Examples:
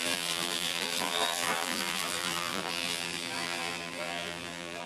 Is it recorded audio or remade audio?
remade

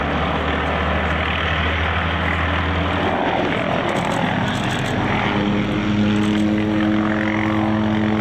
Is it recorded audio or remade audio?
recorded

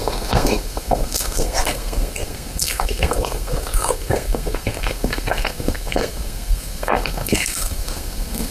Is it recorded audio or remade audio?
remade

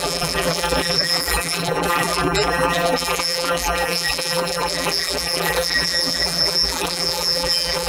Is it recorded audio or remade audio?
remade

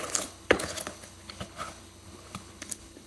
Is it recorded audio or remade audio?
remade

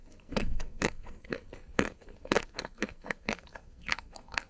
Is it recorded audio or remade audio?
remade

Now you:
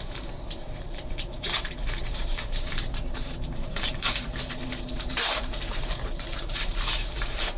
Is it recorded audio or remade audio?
remade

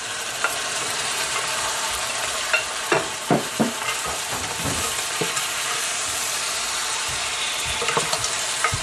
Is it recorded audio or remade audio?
remade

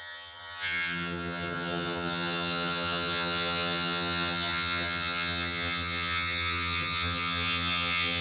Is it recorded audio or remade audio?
remade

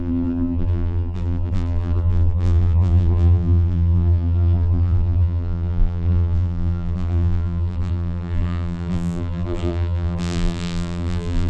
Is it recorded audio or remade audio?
remade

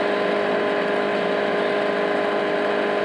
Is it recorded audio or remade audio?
recorded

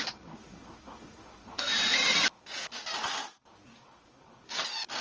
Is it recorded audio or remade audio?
recorded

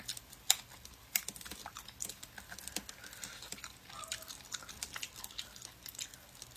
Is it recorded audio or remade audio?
recorded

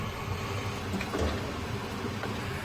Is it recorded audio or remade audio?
recorded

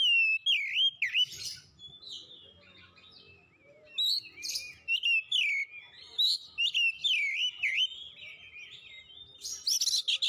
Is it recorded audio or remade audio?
recorded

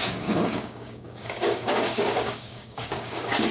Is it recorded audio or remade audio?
remade